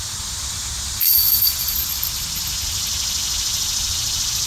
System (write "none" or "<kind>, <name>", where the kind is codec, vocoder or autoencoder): vocoder, BigVGAN v2